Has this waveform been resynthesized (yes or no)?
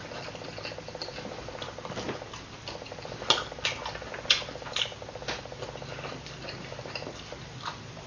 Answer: no